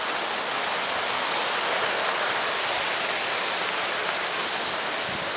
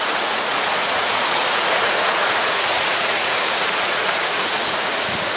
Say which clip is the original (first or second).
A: first